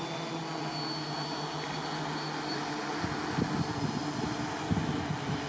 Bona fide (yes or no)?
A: yes